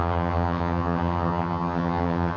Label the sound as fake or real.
fake